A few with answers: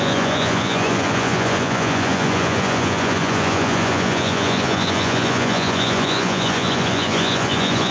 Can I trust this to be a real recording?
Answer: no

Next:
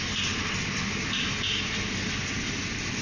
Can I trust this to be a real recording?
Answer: yes